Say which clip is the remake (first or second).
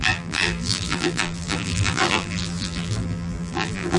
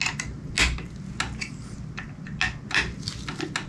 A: first